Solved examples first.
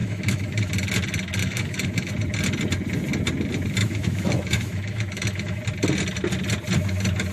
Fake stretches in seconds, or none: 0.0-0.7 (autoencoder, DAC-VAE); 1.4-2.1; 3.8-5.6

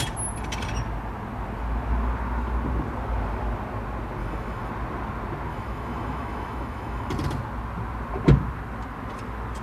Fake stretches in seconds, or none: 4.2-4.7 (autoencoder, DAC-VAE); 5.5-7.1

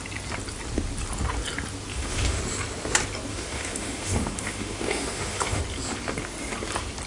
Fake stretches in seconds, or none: 1.9-2.4 (autoencoder, DAC-VAE); 3.3-5.6

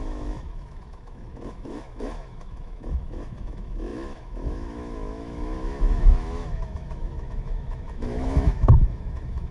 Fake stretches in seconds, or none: 0.0-9.5 (autoencoder, DAC-VAE)

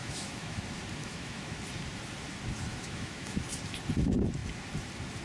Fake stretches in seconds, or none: 0.0-0.6 (autoencoder, DAC-VAE); 1.0-1.6; 2.7-3.4

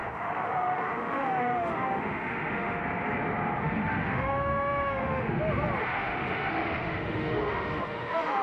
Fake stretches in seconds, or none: 0.0-2.8 (autoencoder, DAC-VAE); 3.6-5.3; 5.8-8.4

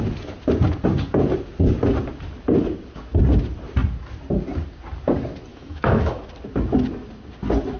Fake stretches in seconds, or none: 5.5-6.2 (autoencoder, DAC-VAE)